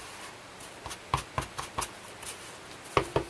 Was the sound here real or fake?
real